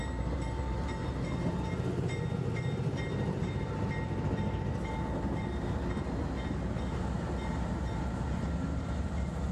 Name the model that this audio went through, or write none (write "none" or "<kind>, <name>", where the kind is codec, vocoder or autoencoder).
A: none